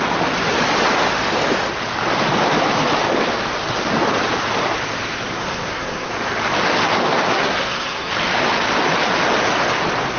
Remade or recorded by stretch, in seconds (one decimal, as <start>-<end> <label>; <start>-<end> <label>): 0.0-5.4 recorded; 5.4-6.1 remade; 6.1-7.3 recorded; 7.3-8.1 remade; 8.1-10.2 recorded

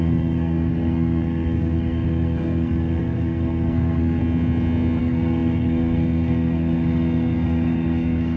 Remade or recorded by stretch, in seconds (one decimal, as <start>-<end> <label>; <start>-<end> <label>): 0.0-4.2 remade; 4.2-5.0 recorded; 5.0-8.4 remade

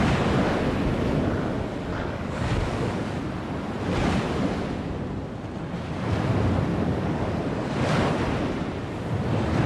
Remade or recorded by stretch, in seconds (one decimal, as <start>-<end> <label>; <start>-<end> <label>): 0.0-1.9 recorded; 1.9-3.2 remade; 3.2-6.7 recorded; 6.7-7.4 remade; 7.4-9.7 recorded

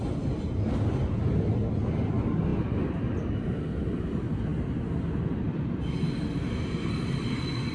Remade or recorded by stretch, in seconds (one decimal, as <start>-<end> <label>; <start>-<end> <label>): 0.0-7.7 recorded

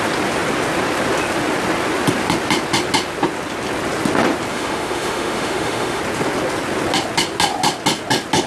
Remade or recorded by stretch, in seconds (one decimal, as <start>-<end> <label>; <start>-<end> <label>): 0.0-4.5 recorded; 4.5-6.0 remade; 6.0-8.5 recorded